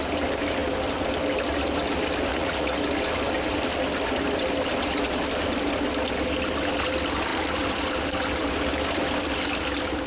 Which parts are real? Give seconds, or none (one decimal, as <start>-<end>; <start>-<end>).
0.0-2.3; 2.8-10.1